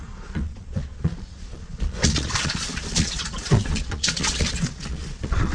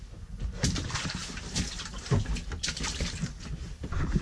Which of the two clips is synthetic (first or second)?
first